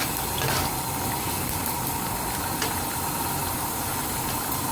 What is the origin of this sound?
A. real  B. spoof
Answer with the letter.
B